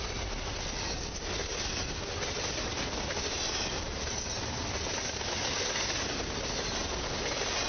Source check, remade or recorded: recorded